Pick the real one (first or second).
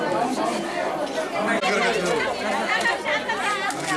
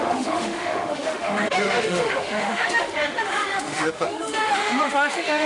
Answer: first